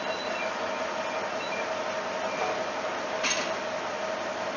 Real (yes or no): yes